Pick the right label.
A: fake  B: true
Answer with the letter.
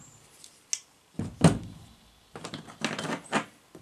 B